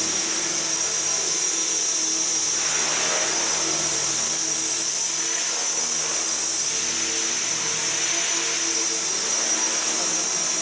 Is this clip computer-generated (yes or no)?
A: no